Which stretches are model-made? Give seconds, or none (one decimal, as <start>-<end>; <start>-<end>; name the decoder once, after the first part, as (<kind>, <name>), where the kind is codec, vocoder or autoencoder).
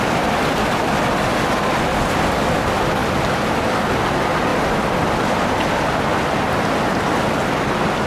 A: none